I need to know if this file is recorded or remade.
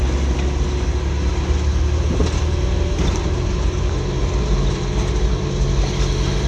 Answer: recorded